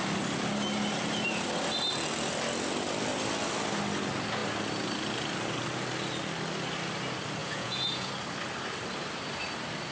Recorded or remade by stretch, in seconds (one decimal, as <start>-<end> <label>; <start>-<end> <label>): 0.0-7.4 recorded; 7.4-8.1 remade; 8.1-9.9 recorded